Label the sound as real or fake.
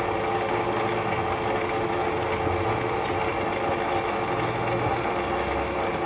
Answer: real